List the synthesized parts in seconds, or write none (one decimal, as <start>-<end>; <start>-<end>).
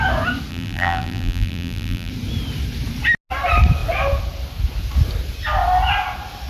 0.5-2.1